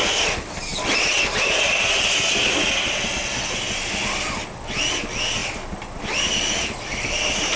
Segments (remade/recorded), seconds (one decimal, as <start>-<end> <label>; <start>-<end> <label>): 0.0-7.6 recorded